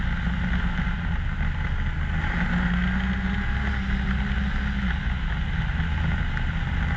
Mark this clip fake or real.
real